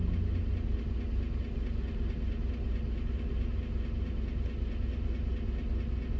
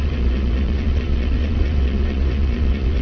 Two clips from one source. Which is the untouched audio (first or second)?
first